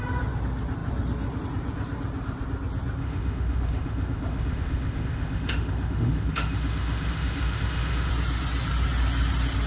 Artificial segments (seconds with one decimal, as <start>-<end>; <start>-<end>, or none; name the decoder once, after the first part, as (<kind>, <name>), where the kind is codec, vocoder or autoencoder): 3.0-8.1 (autoencoder, DAC-VAE)